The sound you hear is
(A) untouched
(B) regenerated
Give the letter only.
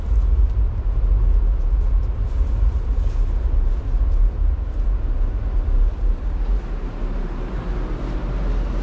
A